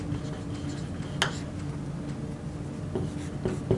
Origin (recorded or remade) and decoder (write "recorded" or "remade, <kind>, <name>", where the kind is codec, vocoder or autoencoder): recorded